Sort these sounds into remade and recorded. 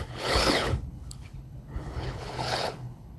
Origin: remade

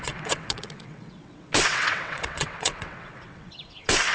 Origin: remade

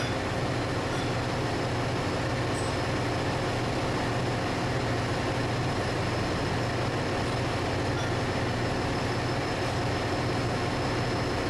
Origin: recorded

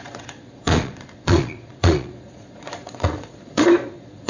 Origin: remade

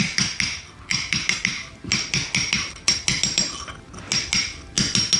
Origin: recorded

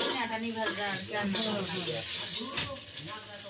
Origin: recorded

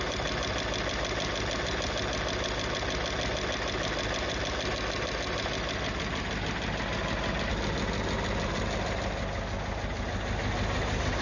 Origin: recorded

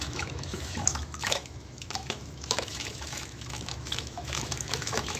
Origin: remade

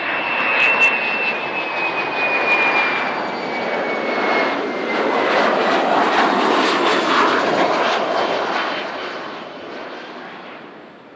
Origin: recorded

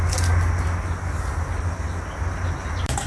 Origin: recorded